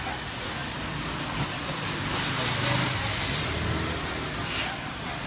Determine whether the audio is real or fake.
real